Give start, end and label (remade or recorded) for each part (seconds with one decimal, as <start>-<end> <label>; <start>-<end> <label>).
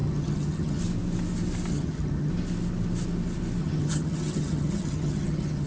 0.0-0.8 remade; 0.8-1.7 recorded; 1.7-2.3 remade; 2.3-3.6 recorded; 3.6-5.7 remade